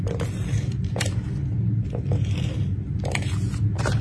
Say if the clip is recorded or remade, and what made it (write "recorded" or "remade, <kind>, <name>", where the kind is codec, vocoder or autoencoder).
recorded